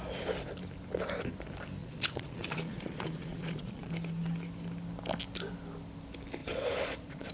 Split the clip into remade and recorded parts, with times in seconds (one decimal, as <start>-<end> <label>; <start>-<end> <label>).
0.0-1.8 recorded; 1.8-3.9 remade; 3.9-6.4 recorded; 6.4-7.3 remade